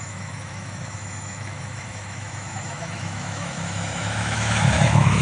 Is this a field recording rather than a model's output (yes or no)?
no